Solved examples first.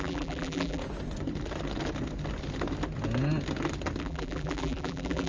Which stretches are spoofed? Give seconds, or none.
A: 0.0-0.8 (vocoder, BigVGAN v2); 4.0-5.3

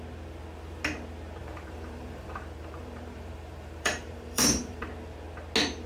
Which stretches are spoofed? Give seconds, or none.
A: 1.4-4.9 (vocoder, BigVGAN v2)

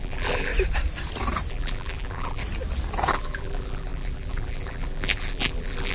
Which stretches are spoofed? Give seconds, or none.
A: 0.0-0.5 (vocoder, BigVGAN v2); 1.5-2.4; 3.1-5.9